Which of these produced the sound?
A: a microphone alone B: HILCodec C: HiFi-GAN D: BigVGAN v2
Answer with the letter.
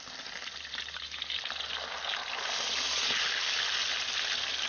A